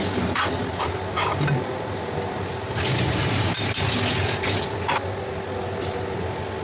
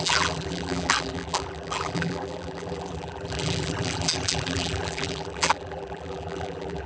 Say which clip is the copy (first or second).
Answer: second